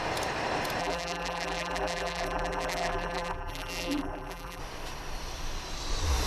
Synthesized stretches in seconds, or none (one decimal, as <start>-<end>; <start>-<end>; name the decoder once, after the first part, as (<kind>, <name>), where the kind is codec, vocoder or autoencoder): 0.8-4.6 (vocoder, BigVGAN v2)